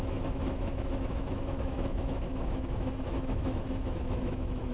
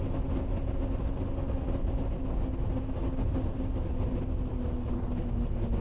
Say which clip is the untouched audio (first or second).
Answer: second